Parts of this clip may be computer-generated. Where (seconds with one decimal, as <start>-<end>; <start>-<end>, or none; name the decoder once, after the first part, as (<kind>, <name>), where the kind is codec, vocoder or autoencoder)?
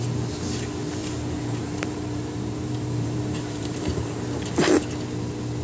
1.0-4.4 (vocoder, BigVGAN v2)